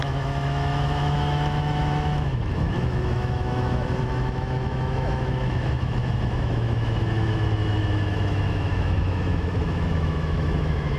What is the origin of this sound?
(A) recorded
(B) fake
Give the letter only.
B